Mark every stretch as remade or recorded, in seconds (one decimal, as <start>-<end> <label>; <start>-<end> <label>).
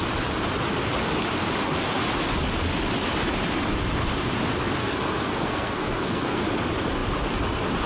0.0-4.8 recorded; 4.8-6.4 remade; 6.4-7.9 recorded